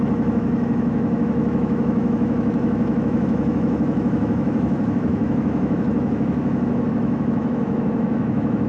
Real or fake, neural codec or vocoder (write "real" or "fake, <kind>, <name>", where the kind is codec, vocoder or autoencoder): fake, autoencoder, DAC-VAE